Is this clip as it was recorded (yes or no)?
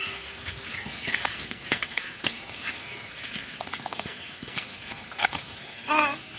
no